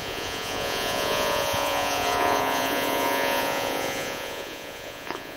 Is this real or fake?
fake